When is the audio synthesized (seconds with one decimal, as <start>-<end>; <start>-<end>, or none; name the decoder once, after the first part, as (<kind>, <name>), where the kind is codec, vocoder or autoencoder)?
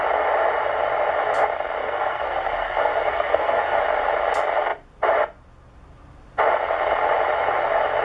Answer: 1.8-3.8 (codec, SNAC)